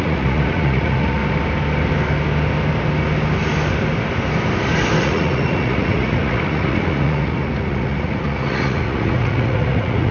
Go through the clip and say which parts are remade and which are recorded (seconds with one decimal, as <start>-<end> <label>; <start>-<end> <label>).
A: 0.0-1.2 remade; 1.2-5.0 recorded; 5.0-10.1 remade